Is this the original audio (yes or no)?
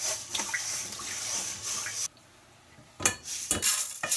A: no